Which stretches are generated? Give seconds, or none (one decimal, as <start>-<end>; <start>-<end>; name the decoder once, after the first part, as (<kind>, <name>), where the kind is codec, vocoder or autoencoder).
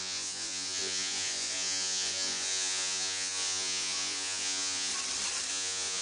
0.0-4.9 (vocoder, Vocos); 5.5-6.0